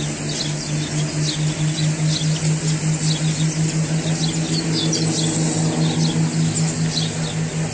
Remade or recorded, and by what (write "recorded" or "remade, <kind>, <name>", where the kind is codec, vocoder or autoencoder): recorded